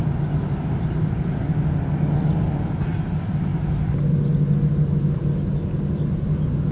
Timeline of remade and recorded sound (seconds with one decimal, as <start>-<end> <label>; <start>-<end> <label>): 0.0-6.7 recorded